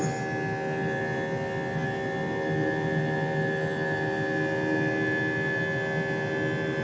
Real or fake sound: real